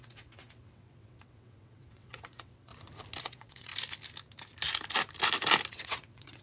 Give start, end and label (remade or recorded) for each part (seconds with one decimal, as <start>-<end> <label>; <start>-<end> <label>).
0.0-2.7 remade; 2.7-3.2 recorded; 3.2-3.7 remade; 3.7-5.7 recorded; 5.7-6.4 remade